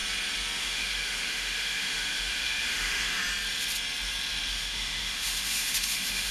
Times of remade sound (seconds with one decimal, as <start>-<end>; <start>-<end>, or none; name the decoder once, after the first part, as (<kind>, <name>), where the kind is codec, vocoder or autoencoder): 0.6-3.2 (autoencoder, DAC-VAE); 4.5-6.3